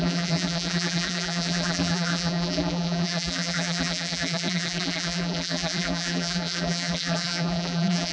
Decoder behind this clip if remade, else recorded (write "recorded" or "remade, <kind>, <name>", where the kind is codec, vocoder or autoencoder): remade, vocoder, BigVGAN v2